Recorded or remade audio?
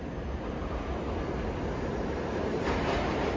recorded